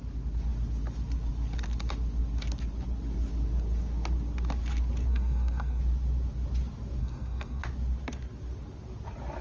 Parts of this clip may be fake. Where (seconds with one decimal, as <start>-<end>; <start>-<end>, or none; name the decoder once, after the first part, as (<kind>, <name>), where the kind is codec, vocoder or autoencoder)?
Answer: 5.1-5.8 (codec, SNAC); 7.0-7.6